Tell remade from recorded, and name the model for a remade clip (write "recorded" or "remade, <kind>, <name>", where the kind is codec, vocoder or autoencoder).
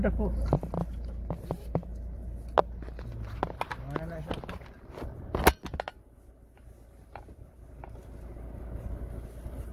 recorded